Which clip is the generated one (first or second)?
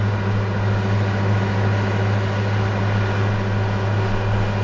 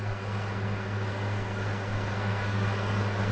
second